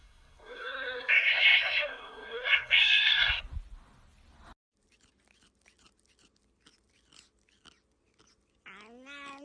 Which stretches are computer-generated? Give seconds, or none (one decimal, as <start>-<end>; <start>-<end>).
0.0-3.4